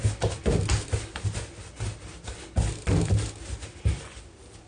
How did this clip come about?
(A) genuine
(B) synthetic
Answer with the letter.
A